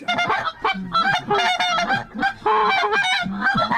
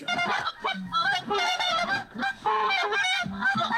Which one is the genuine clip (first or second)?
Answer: first